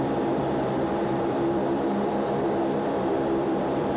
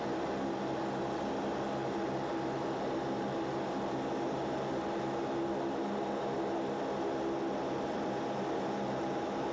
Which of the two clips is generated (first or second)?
first